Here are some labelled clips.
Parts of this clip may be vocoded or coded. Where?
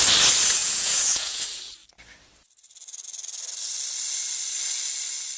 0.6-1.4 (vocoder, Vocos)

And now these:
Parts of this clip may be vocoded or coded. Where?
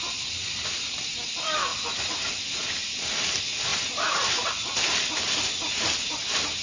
none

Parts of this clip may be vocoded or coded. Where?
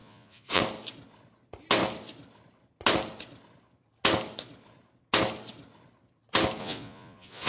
0.0-0.6 (vocoder, Vocos); 6.6-7.5